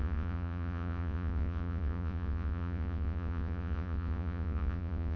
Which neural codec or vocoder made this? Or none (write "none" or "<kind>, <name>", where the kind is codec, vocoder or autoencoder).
vocoder, Vocos